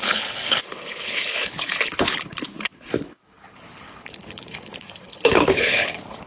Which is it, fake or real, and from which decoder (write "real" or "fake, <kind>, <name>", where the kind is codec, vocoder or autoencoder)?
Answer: fake, codec, HILCodec